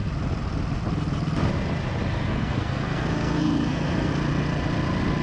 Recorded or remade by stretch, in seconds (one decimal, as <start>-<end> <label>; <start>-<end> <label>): 0.0-2.2 recorded; 2.2-4.1 remade; 4.1-5.2 recorded